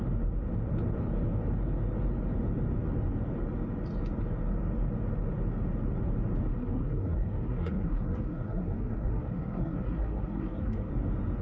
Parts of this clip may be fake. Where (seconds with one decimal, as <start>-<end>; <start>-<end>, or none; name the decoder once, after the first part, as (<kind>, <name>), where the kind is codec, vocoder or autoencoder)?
6.5-10.9 (codec, SNAC)